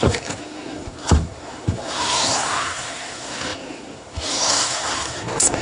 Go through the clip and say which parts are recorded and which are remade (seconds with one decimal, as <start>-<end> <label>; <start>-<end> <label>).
0.0-5.6 remade